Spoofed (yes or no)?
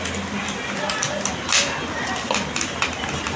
no